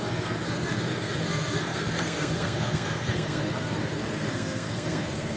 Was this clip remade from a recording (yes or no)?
yes